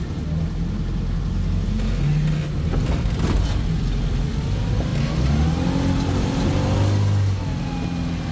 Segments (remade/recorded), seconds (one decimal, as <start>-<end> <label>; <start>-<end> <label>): 0.0-8.3 recorded